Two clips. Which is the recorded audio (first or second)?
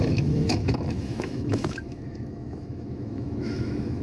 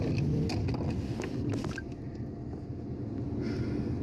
second